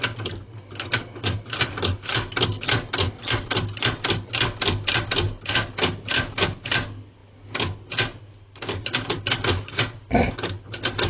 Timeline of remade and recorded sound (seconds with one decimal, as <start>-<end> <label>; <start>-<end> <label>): 0.0-11.1 recorded